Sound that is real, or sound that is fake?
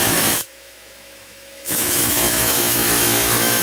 fake